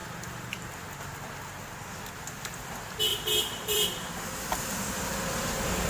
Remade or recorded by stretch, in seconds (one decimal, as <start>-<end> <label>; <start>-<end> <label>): 0.0-0.7 remade; 0.7-3.1 recorded; 3.1-4.1 remade; 4.1-5.9 recorded